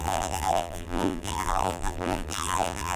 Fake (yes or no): yes